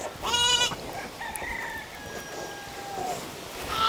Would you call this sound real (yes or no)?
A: yes